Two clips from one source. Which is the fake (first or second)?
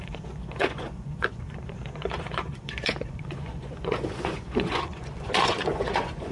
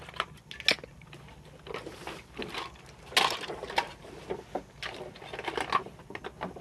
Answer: first